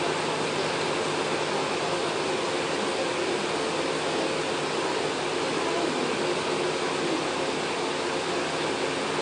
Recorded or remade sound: recorded